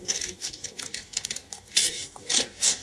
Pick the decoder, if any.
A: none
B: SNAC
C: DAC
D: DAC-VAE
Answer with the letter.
C